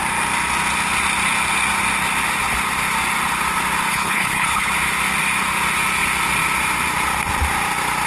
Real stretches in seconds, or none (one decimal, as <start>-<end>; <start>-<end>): 0.0-3.9; 4.7-8.1